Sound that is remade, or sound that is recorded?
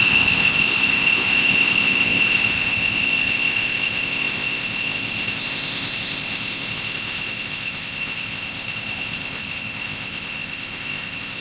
remade